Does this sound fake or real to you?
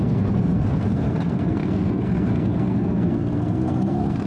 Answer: fake